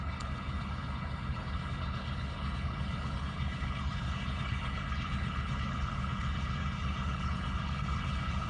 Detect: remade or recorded remade